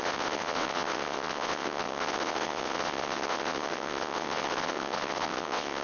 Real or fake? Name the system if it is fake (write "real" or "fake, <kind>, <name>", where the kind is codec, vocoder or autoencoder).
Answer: fake, vocoder, WaveNeXt